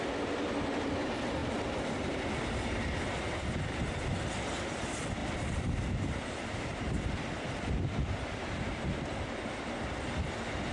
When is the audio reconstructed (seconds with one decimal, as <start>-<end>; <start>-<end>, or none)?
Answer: 1.4-4.2; 5.2-10.1